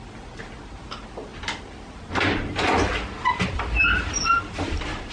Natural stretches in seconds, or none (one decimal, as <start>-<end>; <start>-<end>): 0.0-5.1